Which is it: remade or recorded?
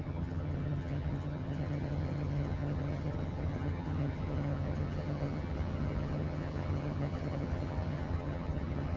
remade